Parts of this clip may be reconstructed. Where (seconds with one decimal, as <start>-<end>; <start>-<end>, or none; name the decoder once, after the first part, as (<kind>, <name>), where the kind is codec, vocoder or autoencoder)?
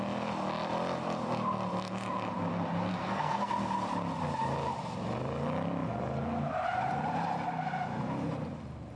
2.9-3.5 (codec, SNAC)